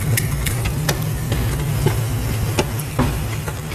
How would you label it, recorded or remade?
recorded